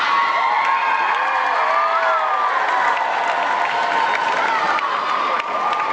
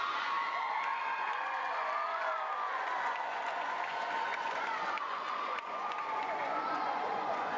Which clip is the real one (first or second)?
first